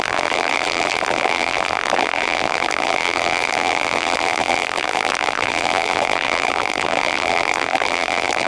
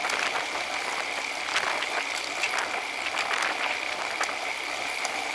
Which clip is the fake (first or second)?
first